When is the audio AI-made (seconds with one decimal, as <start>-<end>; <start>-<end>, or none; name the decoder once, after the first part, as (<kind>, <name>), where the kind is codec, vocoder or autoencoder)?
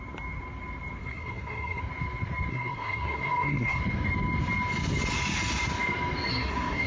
1.0-1.8 (codec, SNAC); 2.5-3.8; 6.3-6.9